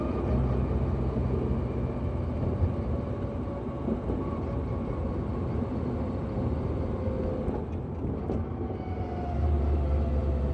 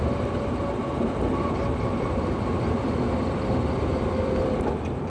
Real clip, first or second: first